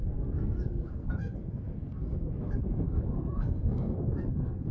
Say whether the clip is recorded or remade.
remade